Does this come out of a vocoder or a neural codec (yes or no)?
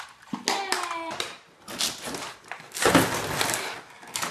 no